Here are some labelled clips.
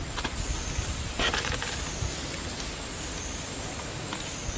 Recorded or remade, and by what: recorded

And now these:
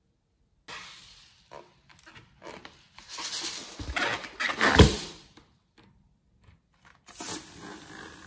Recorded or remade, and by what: recorded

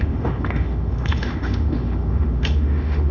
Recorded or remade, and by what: remade, autoencoder, DAC-VAE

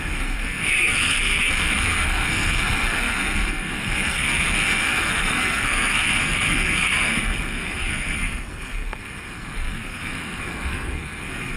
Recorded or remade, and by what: remade, codec, SNAC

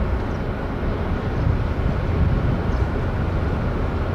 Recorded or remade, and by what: recorded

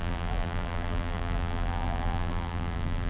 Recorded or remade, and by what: remade, vocoder, BigVGAN v2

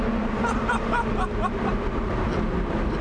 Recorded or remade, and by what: recorded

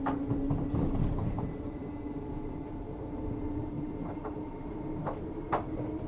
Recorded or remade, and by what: remade, vocoder, BigVGAN v2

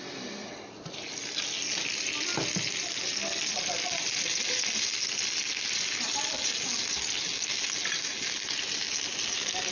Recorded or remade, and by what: recorded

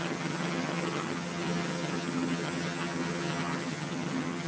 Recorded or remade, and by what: remade, vocoder, HiFi-GAN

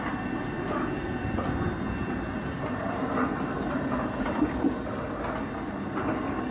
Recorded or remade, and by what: recorded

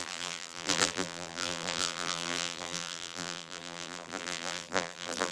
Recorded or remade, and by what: remade, vocoder, BigVGAN v2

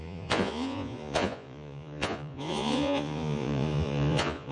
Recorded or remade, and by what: remade, vocoder, Vocos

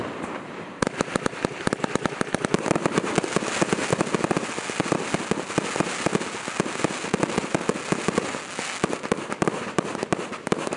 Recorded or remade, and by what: recorded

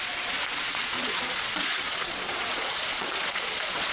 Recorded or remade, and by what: remade, vocoder, Vocos